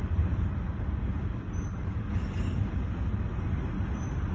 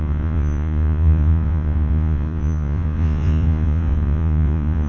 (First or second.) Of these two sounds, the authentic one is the first